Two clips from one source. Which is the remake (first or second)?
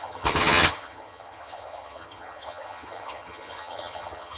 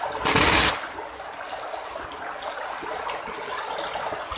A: first